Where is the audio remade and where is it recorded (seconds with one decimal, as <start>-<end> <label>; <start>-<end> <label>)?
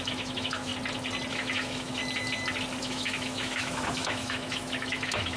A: 0.0-0.7 remade; 0.7-1.3 recorded; 1.3-2.0 remade; 2.0-2.8 recorded; 2.8-5.4 remade